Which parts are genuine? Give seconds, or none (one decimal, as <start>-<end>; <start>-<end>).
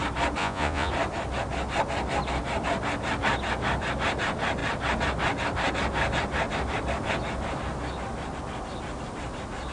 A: 0.0-0.4; 0.9-9.7